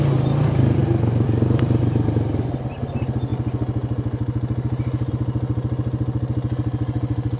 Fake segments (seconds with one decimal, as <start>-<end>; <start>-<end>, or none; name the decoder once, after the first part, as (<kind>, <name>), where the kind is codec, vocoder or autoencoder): none